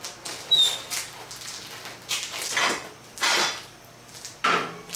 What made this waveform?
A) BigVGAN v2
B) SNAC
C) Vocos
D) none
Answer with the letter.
D